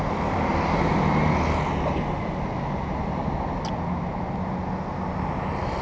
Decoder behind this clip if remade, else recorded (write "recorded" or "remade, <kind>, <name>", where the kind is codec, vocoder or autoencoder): recorded